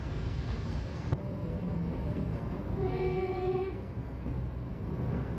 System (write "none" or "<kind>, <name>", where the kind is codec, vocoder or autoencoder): codec, SNAC